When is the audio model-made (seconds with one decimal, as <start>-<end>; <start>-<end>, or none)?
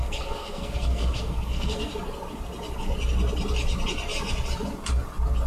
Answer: 0.0-1.9